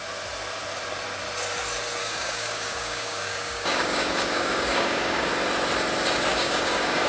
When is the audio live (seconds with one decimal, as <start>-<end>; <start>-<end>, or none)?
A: 0.0-2.0; 5.3-6.3